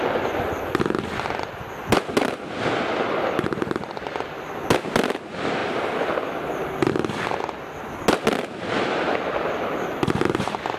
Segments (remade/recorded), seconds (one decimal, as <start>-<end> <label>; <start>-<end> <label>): 0.0-10.8 recorded